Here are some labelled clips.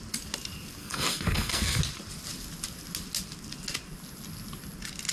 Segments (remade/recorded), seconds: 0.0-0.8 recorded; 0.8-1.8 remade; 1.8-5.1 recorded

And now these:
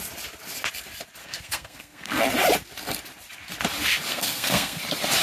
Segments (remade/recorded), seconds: 0.0-1.2 recorded; 1.2-2.2 remade; 2.2-4.1 recorded; 4.1-4.8 remade; 4.8-5.2 recorded

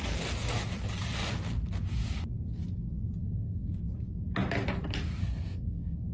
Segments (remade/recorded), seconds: 0.0-3.2 recorded; 3.2-3.7 remade; 3.7-5.2 recorded; 5.2-6.1 remade